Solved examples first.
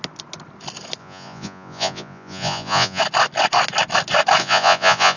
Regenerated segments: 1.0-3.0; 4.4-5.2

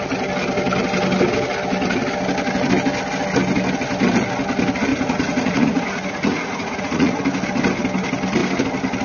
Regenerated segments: 4.9-7.2

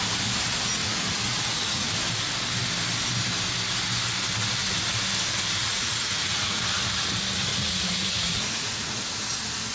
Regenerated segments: 0.8-1.9; 5.6-6.6; 7.5-9.0

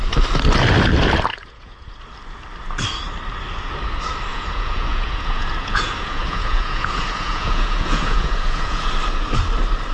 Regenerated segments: 1.3-2.0; 4.3-8.9

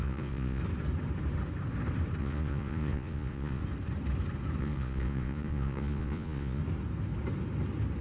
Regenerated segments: 0.0-0.6; 2.2-3.6; 4.6-6.6

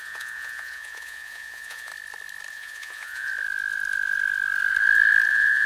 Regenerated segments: 0.0-1.9; 2.5-3.3; 5.3-5.7

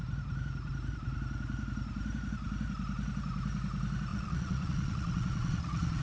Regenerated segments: 4.1-6.0